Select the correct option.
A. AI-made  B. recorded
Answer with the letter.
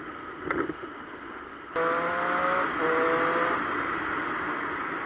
B